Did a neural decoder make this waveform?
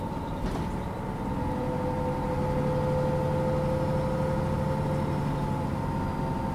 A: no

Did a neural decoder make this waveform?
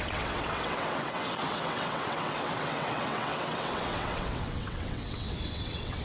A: yes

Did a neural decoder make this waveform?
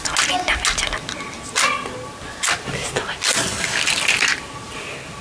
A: no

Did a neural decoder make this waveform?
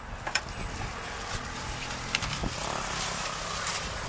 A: no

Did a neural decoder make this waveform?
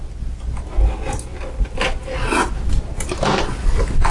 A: no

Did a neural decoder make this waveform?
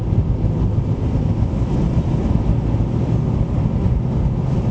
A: no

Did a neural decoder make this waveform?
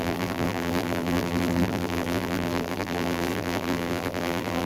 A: yes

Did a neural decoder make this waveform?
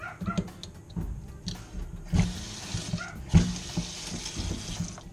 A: no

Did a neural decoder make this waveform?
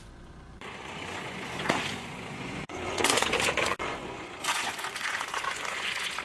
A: yes